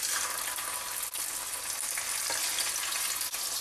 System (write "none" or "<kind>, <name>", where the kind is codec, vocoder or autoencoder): none